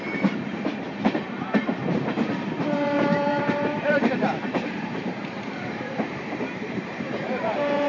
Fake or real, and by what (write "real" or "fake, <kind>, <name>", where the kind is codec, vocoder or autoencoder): fake, vocoder, BigVGAN v2